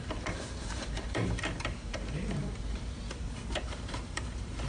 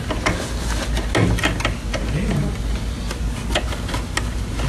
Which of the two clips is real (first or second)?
second